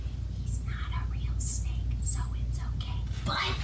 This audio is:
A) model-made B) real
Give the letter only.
B